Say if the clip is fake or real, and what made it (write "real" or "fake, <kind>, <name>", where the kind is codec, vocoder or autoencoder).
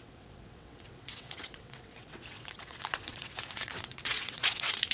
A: fake, vocoder, WaveNeXt